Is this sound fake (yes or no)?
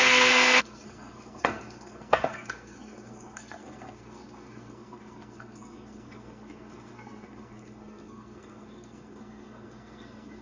yes